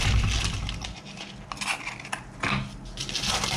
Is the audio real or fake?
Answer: real